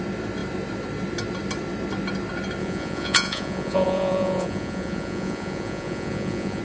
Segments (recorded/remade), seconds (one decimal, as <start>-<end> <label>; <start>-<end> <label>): 0.0-2.6 recorded; 2.6-6.6 remade